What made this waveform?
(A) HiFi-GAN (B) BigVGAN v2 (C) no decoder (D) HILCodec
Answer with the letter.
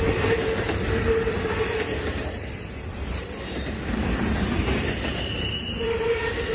B